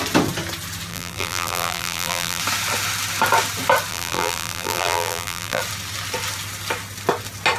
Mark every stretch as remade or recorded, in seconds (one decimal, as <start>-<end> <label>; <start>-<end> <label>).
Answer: 0.0-0.9 recorded; 0.9-2.4 remade; 2.4-3.9 recorded; 3.9-5.6 remade; 5.6-7.6 recorded